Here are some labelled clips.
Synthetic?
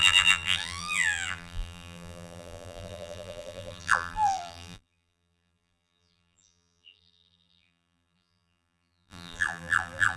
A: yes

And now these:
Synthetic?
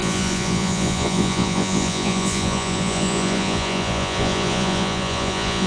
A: yes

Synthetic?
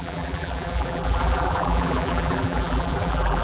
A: yes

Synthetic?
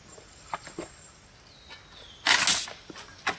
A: no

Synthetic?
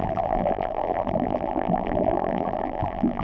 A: yes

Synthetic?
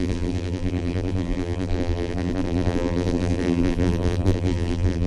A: yes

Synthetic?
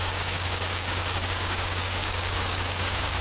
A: yes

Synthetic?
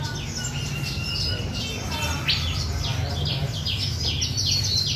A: no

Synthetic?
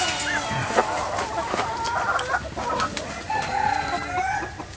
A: no